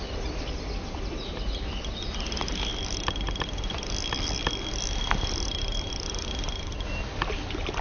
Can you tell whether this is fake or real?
real